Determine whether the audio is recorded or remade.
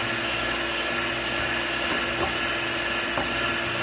recorded